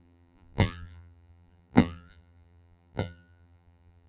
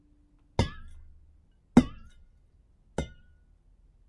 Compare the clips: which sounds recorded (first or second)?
second